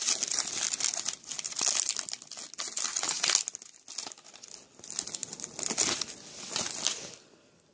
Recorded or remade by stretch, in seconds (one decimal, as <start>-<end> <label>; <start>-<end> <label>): 0.0-7.7 recorded